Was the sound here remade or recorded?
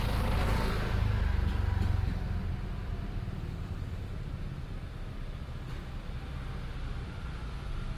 recorded